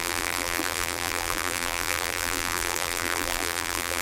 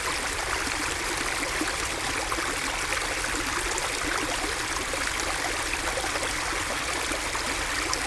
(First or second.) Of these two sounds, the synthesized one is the first